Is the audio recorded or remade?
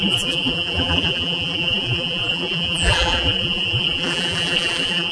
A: remade